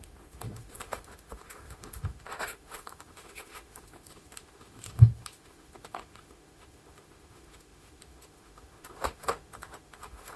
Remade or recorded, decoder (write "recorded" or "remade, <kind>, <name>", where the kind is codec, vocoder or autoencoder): remade, autoencoder, DAC-VAE